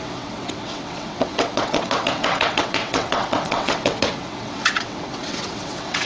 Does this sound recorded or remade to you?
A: remade